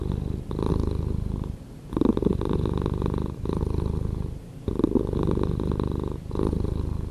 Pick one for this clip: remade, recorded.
recorded